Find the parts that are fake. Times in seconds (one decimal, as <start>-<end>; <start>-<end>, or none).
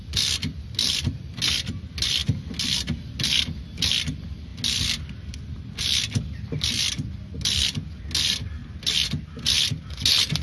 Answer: none